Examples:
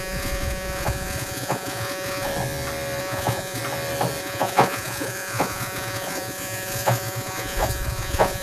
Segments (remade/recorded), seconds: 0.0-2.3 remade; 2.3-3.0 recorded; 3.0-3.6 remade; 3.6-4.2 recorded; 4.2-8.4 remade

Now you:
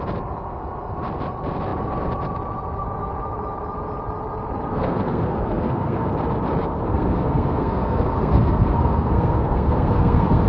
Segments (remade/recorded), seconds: 0.0-4.7 recorded; 4.7-6.1 remade; 6.1-6.6 recorded; 6.6-10.5 remade